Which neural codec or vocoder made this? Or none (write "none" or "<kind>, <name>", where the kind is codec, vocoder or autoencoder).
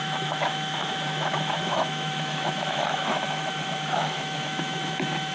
autoencoder, DAC-VAE